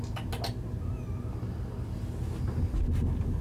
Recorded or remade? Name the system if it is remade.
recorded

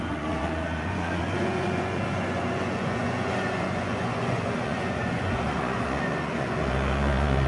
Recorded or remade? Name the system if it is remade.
remade, vocoder, Vocos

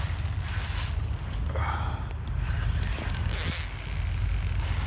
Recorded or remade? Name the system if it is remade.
recorded